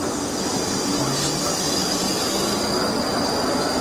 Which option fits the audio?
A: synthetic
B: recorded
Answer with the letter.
B